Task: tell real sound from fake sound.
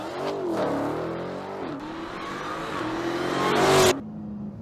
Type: real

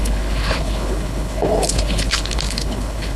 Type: fake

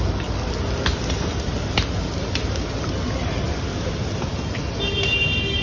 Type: real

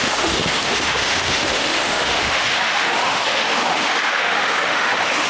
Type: fake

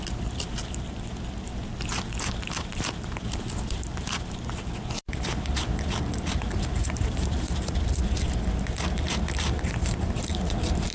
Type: fake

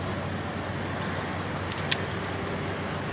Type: real